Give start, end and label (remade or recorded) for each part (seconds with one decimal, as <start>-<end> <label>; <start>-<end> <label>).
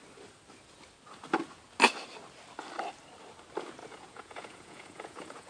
0.0-3.8 recorded; 3.8-5.5 remade